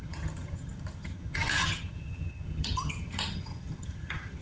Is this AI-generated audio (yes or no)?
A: yes